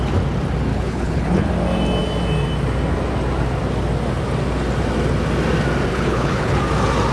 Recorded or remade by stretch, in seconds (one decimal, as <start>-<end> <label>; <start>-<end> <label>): 0.0-0.7 recorded; 0.7-1.5 remade; 1.5-5.9 recorded; 5.9-6.6 remade; 6.6-7.1 recorded